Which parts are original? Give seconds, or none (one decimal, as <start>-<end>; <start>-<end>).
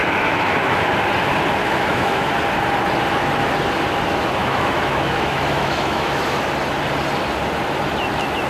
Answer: 0.9-1.6; 2.3-4.4; 6.2-8.5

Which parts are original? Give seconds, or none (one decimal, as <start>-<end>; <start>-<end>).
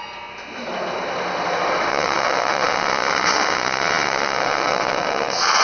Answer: 0.0-1.9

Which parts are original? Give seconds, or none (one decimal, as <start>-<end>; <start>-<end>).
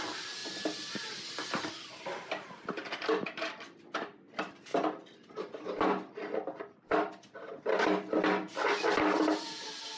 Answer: 0.0-10.0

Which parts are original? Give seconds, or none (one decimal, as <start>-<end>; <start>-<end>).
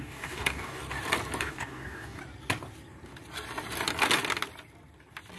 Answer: 0.8-1.4; 2.2-5.4